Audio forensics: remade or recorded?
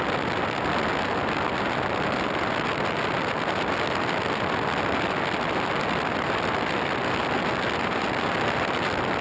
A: recorded